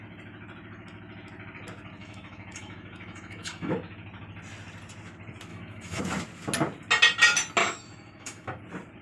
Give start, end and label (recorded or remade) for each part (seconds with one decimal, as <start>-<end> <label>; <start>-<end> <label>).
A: 0.0-2.0 recorded; 2.0-3.7 remade; 3.7-5.5 recorded; 5.5-6.0 remade; 6.0-7.6 recorded; 7.6-8.6 remade; 8.6-9.0 recorded